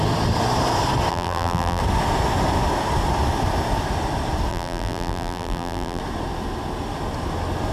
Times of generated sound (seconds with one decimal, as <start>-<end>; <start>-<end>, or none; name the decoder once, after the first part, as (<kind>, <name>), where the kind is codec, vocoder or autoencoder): 1.1-1.8 (vocoder, BigVGAN v2); 4.5-6.0